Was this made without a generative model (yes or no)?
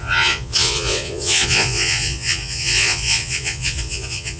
no